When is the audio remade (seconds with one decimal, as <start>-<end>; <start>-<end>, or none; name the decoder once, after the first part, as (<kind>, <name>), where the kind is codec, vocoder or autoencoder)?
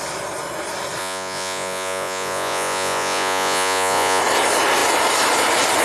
1.0-4.2 (vocoder, Vocos)